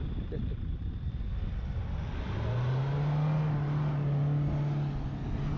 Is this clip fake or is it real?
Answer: real